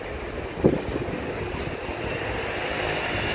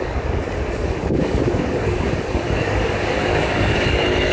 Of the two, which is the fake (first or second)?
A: second